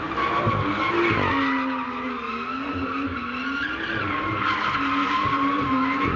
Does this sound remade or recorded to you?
recorded